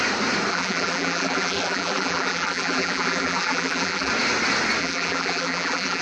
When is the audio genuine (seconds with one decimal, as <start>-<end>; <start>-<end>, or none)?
0.0-0.5; 4.1-4.8